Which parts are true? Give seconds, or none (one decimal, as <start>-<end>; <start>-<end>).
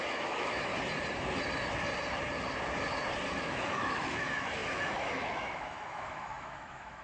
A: 0.7-3.3